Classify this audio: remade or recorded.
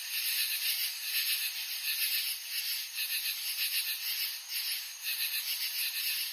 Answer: recorded